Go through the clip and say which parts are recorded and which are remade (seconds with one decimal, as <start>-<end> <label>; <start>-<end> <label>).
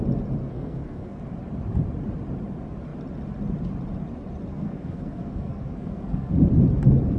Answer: 0.0-0.4 recorded; 0.4-1.2 remade; 1.2-4.5 recorded; 4.5-6.3 remade; 6.3-7.2 recorded